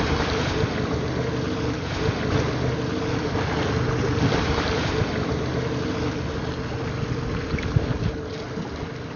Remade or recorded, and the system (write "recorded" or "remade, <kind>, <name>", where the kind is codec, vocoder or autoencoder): recorded